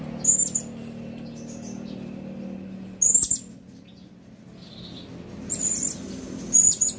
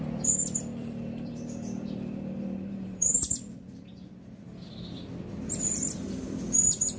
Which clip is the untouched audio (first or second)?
first